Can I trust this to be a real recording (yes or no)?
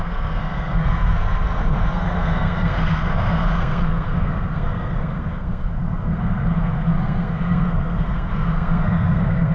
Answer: no